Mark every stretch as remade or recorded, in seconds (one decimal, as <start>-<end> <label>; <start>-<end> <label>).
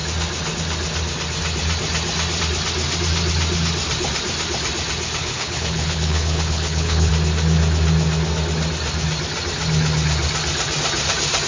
0.0-5.2 recorded; 5.2-7.1 remade; 7.1-11.5 recorded